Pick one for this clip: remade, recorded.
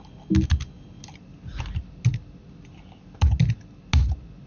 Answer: recorded